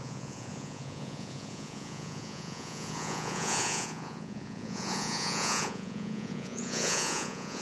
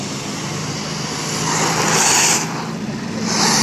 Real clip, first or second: second